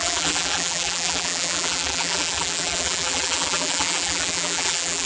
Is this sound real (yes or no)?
no